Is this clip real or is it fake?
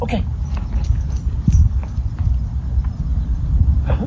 real